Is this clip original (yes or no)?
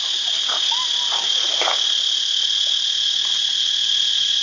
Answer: yes